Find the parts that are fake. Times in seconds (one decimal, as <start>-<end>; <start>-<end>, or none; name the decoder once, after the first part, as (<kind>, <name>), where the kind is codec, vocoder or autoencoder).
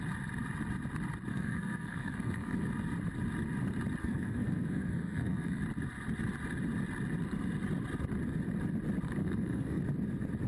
1.3-2.7 (codec, SNAC); 4.0-5.6; 9.2-9.8